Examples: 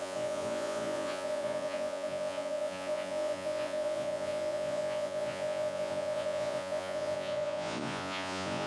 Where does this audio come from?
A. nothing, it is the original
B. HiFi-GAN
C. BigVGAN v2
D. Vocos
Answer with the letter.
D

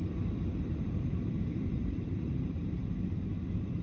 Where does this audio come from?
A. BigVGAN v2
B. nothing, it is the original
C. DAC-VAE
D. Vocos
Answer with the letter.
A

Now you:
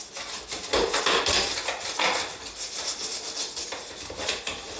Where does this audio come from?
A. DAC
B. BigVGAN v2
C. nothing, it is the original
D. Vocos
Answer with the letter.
C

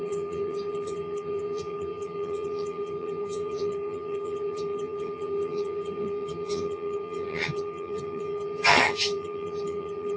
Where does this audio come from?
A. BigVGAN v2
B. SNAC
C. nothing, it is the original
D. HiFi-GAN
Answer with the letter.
D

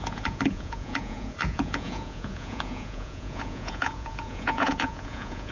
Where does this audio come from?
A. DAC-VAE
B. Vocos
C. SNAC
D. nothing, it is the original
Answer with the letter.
B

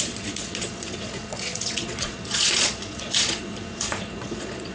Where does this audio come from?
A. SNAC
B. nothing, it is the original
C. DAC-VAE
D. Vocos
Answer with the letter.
D